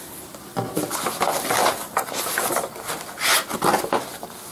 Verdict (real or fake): real